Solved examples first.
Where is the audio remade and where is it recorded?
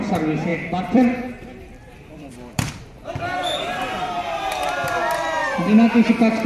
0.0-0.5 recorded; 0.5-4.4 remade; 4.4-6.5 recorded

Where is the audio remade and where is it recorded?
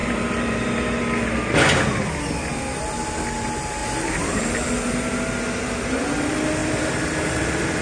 0.0-1.0 remade; 1.0-3.8 recorded; 3.8-4.7 remade; 4.7-6.6 recorded; 6.6-7.8 remade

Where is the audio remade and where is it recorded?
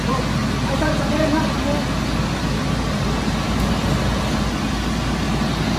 0.0-0.4 recorded; 0.4-1.1 remade; 1.1-5.8 recorded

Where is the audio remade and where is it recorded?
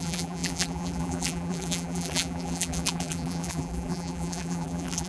0.0-5.1 remade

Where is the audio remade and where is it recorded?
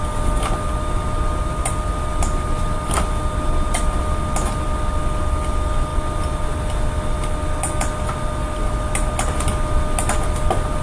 0.0-10.8 recorded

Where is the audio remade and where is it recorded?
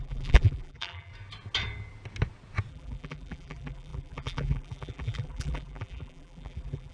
0.0-1.1 remade; 1.1-2.7 recorded; 2.7-6.9 remade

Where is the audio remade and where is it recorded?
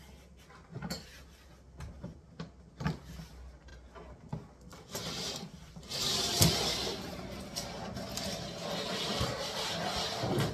0.0-4.7 recorded; 4.7-7.7 remade; 7.7-10.5 recorded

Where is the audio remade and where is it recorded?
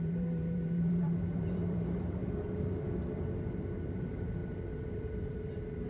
0.0-2.2 remade; 2.2-4.0 recorded; 4.0-5.9 remade